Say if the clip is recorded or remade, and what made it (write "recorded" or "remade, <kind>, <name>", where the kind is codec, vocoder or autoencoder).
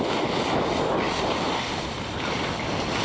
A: recorded